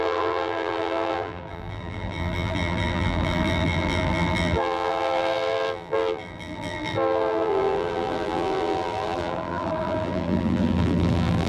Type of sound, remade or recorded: remade